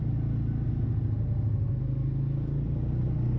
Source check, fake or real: real